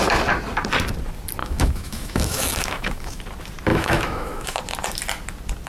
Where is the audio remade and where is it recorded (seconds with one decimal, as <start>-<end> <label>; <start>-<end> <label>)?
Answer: 0.0-1.4 recorded; 1.4-3.2 remade; 3.2-3.7 recorded; 3.7-4.6 remade; 4.6-5.7 recorded